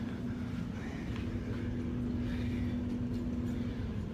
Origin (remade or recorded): recorded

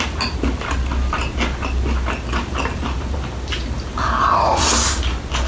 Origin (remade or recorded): recorded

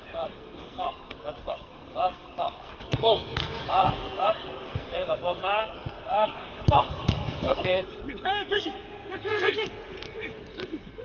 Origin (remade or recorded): remade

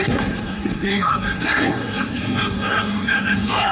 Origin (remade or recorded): remade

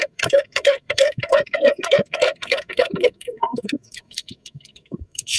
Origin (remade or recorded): remade